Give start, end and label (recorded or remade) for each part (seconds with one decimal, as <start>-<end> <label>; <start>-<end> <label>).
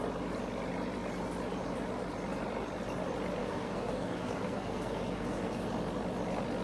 0.0-3.4 recorded; 3.4-5.7 remade; 5.7-6.6 recorded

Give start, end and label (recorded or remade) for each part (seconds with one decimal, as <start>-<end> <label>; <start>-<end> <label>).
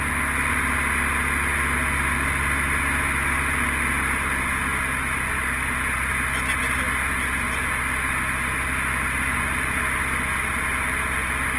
0.0-11.6 recorded